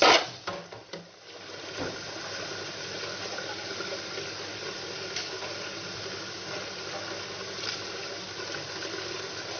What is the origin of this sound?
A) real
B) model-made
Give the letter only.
A